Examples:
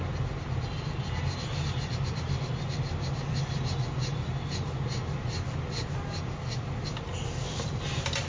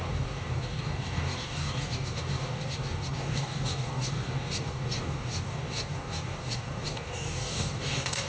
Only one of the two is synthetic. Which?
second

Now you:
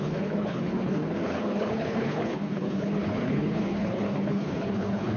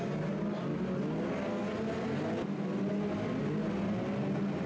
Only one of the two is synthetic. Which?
first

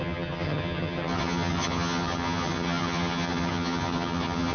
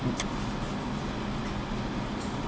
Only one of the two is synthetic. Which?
first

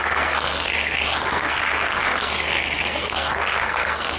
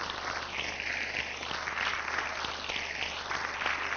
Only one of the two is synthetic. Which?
first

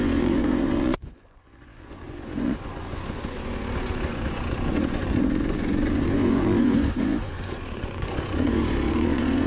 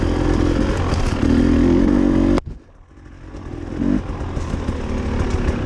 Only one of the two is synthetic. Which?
first